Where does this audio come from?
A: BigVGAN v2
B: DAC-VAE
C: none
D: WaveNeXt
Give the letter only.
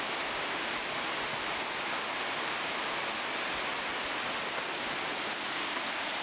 C